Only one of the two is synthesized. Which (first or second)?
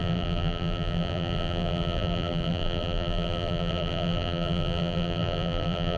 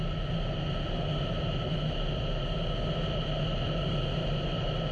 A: first